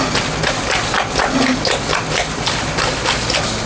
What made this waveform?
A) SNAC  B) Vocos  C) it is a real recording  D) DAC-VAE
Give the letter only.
C